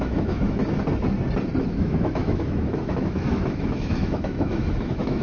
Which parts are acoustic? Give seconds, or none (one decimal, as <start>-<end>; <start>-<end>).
0.6-1.6